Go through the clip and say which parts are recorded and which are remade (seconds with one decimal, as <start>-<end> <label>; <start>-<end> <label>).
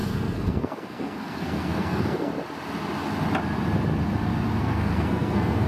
0.0-2.3 remade; 2.3-4.6 recorded; 4.6-5.7 remade